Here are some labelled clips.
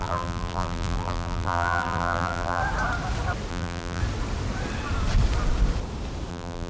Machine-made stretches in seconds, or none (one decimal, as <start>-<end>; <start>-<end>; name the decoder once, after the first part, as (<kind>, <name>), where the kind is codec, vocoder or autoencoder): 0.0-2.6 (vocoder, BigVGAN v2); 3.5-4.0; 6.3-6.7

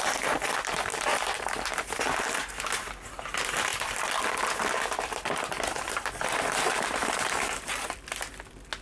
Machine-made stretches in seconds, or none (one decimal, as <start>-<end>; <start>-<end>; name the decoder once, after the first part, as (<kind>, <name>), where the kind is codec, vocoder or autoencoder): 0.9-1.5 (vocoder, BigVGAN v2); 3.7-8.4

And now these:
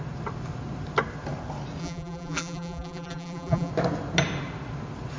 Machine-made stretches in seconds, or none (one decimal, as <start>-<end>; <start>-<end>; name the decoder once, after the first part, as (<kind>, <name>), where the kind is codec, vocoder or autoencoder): 1.8-3.7 (vocoder, BigVGAN v2)

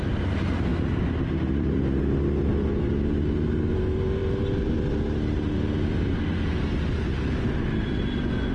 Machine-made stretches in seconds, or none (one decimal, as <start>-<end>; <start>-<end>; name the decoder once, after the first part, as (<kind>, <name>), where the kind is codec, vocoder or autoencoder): none

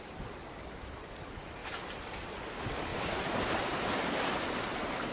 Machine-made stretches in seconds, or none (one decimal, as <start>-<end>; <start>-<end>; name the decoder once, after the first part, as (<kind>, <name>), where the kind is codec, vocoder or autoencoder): 1.6-2.4 (vocoder, BigVGAN v2); 2.9-4.1